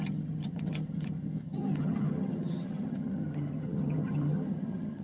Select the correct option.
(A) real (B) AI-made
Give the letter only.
B